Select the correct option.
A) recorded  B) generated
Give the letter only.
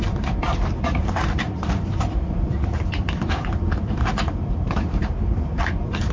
B